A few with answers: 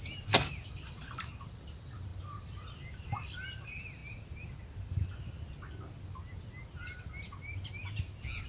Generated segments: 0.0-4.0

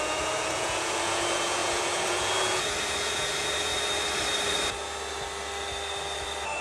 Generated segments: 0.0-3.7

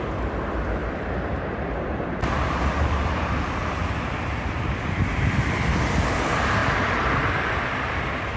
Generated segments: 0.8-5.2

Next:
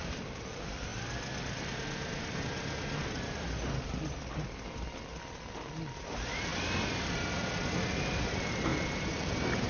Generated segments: 0.0-0.9; 6.0-9.7

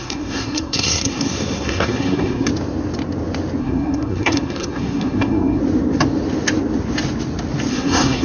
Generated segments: 0.0-2.5; 3.6-5.6; 7.7-8.2